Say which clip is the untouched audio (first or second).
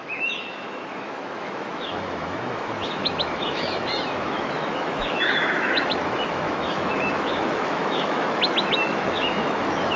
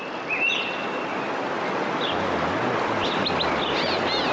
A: second